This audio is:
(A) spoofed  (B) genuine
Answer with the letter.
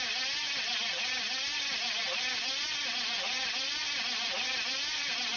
B